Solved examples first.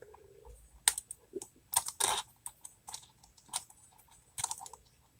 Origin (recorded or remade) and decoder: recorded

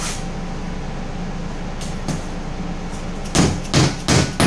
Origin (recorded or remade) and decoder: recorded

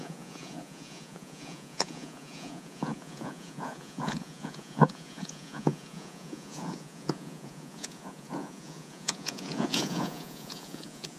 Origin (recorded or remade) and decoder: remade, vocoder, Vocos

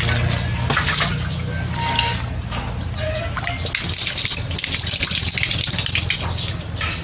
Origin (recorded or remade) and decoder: recorded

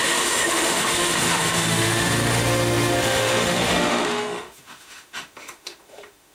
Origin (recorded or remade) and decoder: remade, autoencoder, DAC-VAE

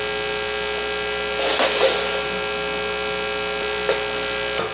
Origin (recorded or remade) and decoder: recorded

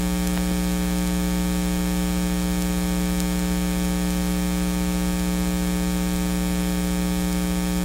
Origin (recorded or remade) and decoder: recorded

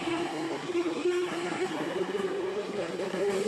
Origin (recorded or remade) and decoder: remade, codec, SNAC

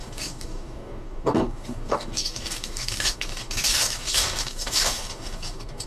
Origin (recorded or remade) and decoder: remade, codec, DAC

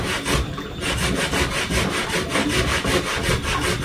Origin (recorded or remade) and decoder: recorded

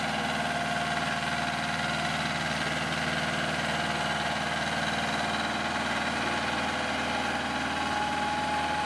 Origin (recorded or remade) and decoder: recorded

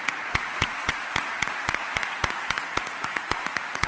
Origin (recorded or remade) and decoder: remade, vocoder, Vocos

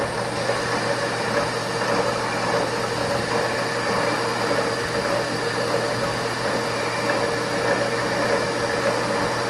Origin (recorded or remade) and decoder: recorded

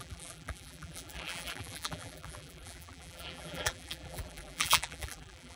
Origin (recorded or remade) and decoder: remade, vocoder, BigVGAN v2